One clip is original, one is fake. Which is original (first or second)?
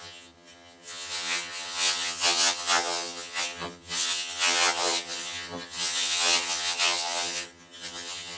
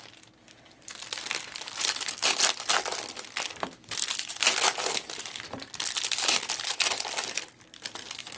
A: second